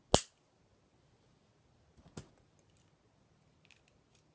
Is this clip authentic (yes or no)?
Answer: yes